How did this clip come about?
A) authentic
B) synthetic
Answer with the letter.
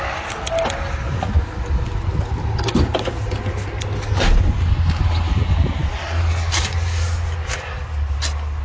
A